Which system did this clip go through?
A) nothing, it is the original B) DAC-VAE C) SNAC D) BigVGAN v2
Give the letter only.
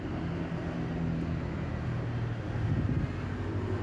A